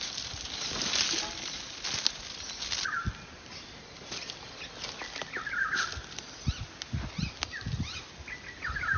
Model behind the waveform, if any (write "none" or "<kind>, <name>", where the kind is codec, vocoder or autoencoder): none